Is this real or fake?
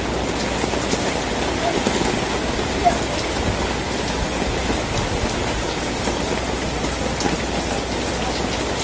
real